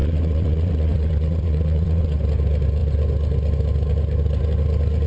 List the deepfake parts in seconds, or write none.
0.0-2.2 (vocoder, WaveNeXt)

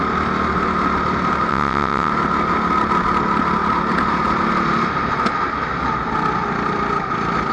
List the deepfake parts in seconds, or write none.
1.5-2.1 (vocoder, WaveNeXt)

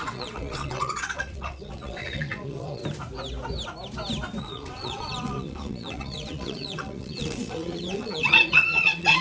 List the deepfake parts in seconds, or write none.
0.0-2.8 (vocoder, WaveNeXt); 4.4-9.2

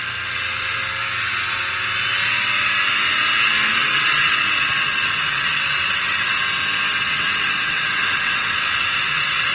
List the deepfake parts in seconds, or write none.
3.7-6.4 (vocoder, WaveNeXt); 6.9-9.5

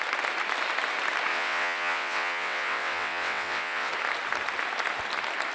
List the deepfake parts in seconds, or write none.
1.3-3.9 (vocoder, WaveNeXt)

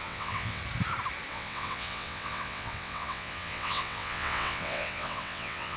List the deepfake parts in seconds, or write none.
0.0-0.6 (vocoder, WaveNeXt); 1.3-5.8

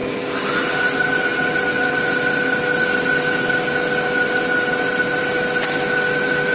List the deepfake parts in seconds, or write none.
none